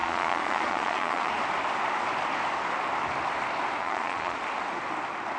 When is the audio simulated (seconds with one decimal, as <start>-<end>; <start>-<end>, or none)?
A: 0.0-1.3; 3.8-4.4